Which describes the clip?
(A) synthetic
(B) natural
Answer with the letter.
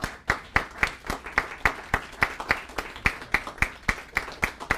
B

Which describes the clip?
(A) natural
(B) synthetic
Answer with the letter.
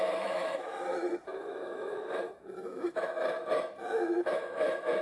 B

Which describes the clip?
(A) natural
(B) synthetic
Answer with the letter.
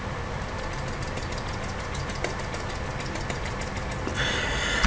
A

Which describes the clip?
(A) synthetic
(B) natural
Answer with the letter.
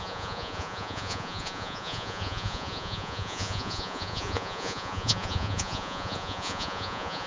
A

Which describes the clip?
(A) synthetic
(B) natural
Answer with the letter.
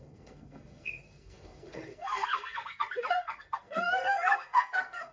A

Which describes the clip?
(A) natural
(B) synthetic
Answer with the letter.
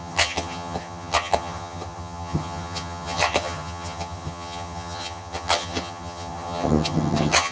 B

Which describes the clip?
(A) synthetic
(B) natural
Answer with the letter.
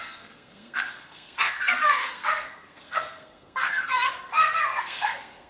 A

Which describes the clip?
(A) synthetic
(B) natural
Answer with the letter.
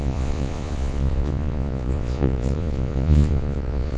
A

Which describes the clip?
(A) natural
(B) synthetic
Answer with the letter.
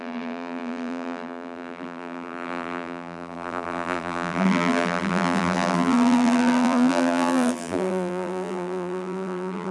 B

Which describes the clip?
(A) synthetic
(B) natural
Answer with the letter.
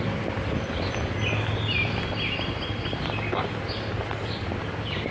A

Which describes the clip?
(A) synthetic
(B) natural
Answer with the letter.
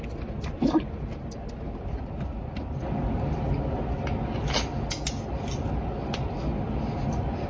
B